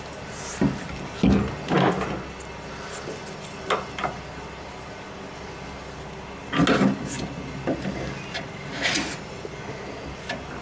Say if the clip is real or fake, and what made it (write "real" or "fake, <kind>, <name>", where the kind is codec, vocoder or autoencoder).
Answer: real